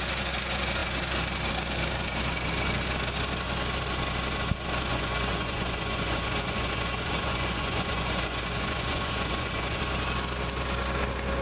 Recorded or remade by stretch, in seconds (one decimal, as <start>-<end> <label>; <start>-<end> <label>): 0.0-4.9 recorded; 4.9-9.8 remade; 9.8-11.4 recorded